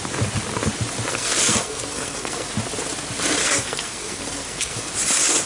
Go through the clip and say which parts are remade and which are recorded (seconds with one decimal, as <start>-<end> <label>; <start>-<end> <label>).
0.0-1.1 recorded; 1.1-2.5 remade; 2.5-3.4 recorded; 3.4-4.9 remade; 4.9-5.5 recorded